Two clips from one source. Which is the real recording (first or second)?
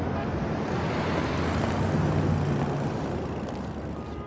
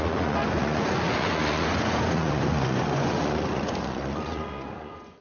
first